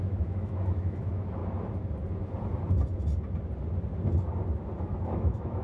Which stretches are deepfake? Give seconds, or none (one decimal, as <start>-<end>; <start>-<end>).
0.0-1.4; 4.8-5.6